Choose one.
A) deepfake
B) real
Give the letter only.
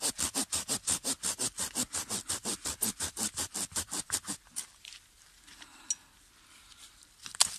B